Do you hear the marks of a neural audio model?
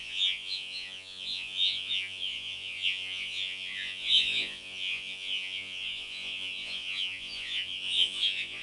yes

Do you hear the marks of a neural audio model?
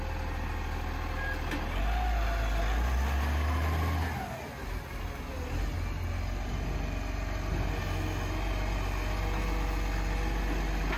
no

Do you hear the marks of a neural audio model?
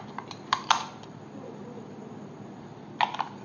no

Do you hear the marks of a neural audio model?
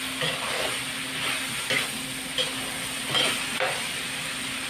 no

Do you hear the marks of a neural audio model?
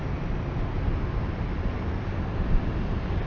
no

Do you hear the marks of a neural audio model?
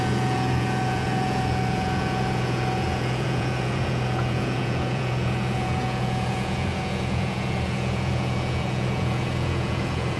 yes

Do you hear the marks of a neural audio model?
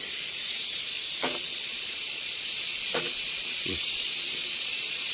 yes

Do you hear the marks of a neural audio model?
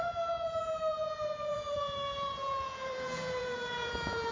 yes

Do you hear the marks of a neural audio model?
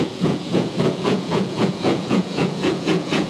yes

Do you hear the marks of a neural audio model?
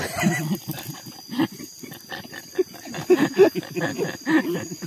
no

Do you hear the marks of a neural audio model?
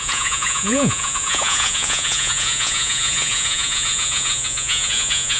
yes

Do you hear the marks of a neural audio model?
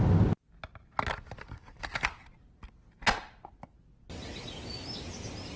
no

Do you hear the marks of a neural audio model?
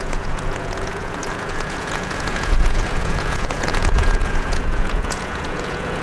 yes